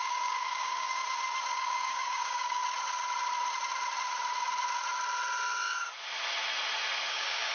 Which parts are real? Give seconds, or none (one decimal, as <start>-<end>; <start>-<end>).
1.0-1.5; 2.6-7.1